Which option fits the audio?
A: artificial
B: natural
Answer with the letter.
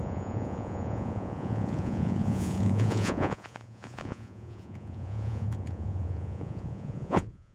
A